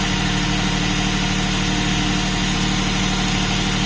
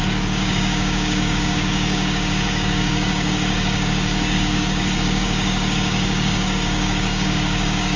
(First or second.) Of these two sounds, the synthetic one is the second